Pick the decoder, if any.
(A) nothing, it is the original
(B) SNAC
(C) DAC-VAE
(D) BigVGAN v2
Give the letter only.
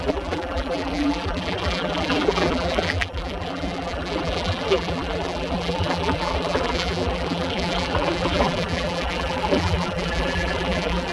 D